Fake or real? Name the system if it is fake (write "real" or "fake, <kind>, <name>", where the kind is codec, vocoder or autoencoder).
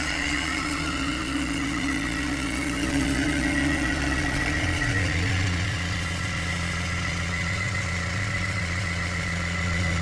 fake, vocoder, Vocos